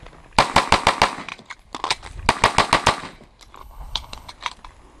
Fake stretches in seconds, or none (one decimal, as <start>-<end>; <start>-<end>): 3.6-4.3